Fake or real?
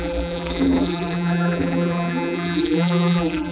fake